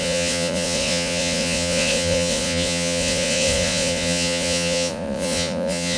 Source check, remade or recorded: remade